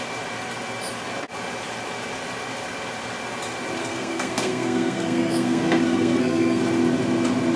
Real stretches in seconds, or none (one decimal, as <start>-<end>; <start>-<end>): 0.0-3.8; 6.6-7.6